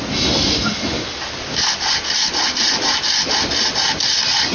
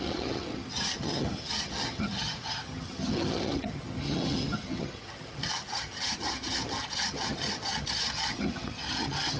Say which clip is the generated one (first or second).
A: second